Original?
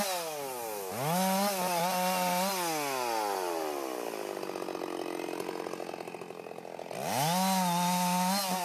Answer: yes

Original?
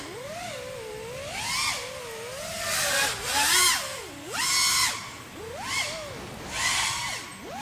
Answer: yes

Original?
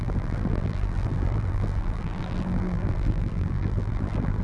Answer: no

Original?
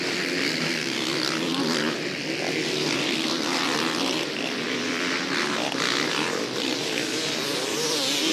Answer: yes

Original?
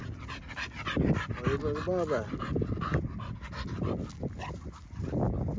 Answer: yes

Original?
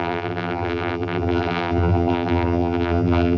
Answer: no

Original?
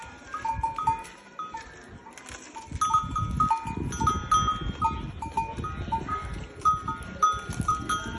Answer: yes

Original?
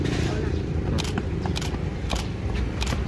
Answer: yes